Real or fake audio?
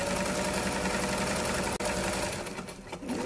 real